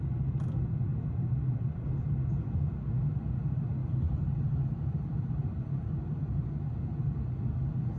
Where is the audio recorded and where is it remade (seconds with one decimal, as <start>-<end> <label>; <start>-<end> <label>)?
0.0-3.8 recorded; 3.8-6.5 remade; 6.5-8.0 recorded